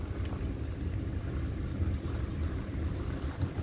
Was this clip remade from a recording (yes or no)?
no